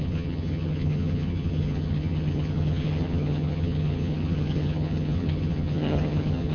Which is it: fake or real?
fake